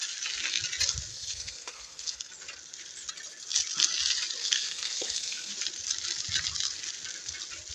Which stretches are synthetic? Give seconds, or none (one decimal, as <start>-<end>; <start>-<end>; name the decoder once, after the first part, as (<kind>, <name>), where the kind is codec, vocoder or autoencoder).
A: 1.1-2.3 (codec, SNAC); 4.4-5.5